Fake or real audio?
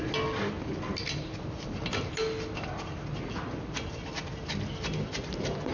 real